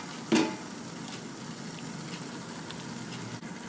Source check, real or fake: real